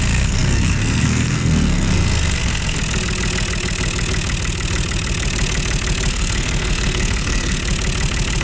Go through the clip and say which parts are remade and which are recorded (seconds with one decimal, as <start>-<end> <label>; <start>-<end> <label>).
0.0-2.8 remade; 2.8-6.1 recorded; 6.1-7.6 remade; 7.6-8.4 recorded